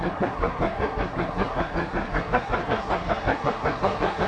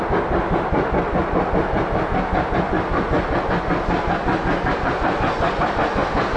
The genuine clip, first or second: second